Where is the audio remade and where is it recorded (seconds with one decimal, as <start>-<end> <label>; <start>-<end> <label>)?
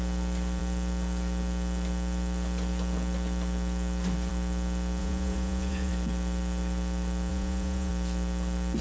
0.0-5.0 recorded; 5.0-5.9 remade; 5.9-7.3 recorded; 7.3-7.9 remade; 7.9-8.8 recorded